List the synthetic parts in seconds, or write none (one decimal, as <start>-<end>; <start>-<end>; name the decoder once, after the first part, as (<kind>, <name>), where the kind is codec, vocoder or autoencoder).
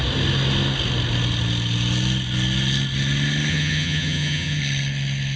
3.5-4.6 (vocoder, HiFi-GAN)